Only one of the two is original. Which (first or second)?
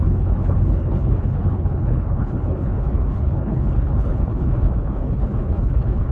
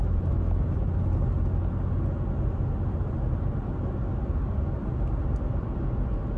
second